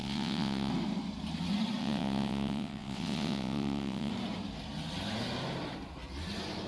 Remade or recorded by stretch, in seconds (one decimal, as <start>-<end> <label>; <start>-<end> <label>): 0.0-0.7 remade; 0.7-1.8 recorded; 1.8-4.1 remade; 4.1-6.7 recorded